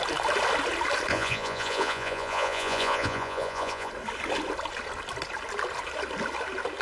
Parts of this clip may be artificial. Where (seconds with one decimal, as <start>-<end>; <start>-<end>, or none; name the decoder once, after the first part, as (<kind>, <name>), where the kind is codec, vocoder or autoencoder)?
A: 1.1-3.9 (vocoder, Vocos)